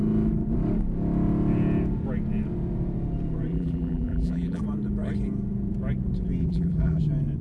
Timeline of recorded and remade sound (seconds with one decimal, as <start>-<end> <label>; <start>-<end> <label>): 0.0-3.5 recorded; 3.5-4.6 remade; 4.6-6.4 recorded; 6.4-7.0 remade; 7.0-7.4 recorded